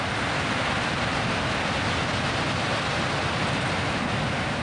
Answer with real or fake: real